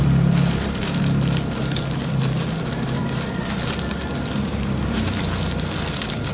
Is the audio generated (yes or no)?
yes